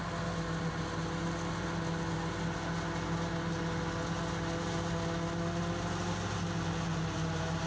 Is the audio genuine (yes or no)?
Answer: yes